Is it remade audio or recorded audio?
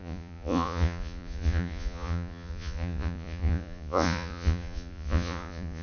remade